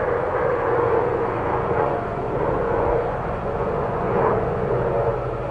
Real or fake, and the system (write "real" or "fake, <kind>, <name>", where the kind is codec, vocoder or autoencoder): fake, vocoder, Vocos